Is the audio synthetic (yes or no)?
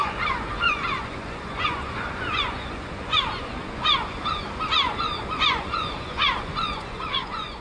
yes